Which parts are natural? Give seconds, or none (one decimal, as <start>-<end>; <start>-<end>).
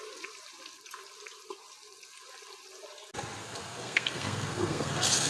0.0-3.4